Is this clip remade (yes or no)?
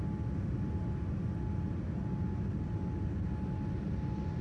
no